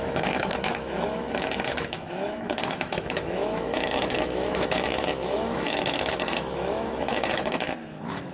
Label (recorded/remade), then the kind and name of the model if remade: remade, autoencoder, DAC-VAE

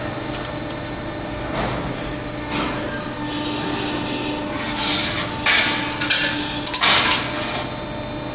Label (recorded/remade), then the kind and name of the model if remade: recorded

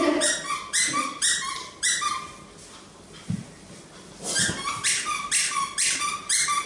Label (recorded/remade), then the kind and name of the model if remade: recorded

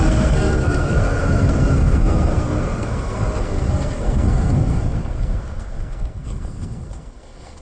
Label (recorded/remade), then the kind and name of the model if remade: remade, codec, SNAC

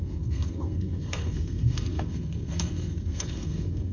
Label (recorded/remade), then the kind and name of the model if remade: remade, codec, SNAC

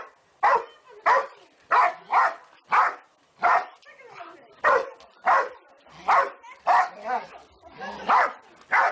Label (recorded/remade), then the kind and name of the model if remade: recorded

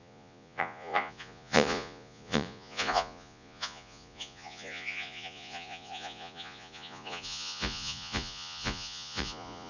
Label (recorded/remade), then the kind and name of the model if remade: remade, vocoder, Vocos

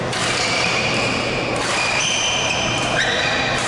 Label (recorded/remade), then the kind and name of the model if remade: remade, vocoder, BigVGAN v2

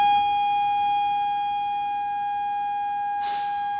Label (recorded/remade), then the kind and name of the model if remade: recorded